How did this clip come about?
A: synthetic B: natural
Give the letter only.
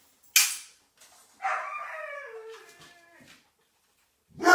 B